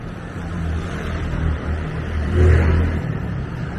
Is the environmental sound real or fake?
fake